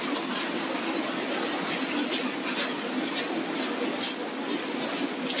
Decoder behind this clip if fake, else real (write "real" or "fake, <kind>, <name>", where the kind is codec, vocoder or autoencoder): real